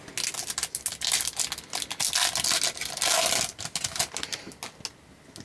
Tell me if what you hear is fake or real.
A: real